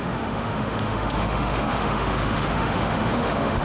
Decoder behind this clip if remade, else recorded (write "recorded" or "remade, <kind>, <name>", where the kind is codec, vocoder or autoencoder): remade, autoencoder, DAC-VAE